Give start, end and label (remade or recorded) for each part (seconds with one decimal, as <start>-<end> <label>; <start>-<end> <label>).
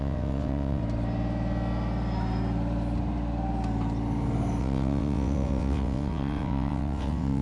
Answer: 0.0-0.8 remade; 0.8-4.6 recorded; 4.6-7.4 remade